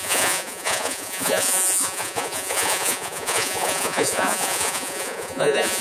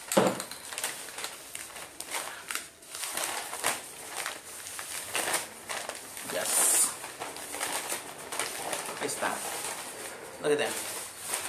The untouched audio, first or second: second